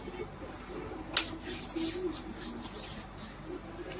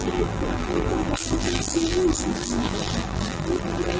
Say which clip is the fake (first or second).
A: second